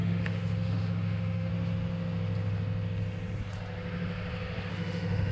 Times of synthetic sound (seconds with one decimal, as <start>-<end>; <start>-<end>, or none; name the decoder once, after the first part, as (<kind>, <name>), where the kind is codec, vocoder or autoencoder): 0.0-1.5 (autoencoder, DAC-VAE); 4.7-5.3